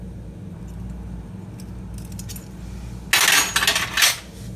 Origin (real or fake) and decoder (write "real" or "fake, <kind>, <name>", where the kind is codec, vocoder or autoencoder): real